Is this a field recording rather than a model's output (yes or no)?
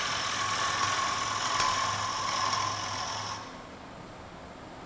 yes